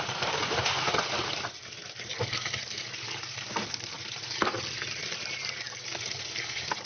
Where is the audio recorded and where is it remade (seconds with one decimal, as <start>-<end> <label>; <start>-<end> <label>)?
0.0-6.9 recorded